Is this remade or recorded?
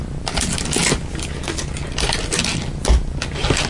recorded